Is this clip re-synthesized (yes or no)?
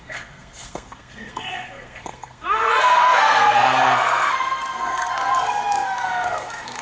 yes